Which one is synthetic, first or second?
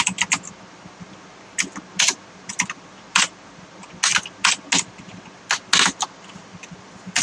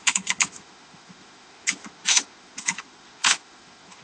second